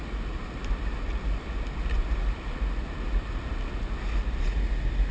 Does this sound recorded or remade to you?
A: recorded